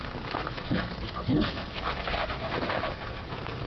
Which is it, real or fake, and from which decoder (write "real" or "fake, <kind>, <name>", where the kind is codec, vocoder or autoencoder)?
fake, codec, SNAC